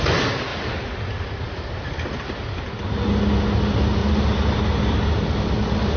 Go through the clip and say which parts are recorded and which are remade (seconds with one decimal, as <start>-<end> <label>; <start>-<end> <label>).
0.0-0.5 recorded; 0.5-2.6 remade; 2.6-4.0 recorded; 4.0-4.5 remade; 4.5-6.0 recorded